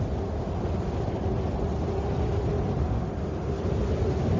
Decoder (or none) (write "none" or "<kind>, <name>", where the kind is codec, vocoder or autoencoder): none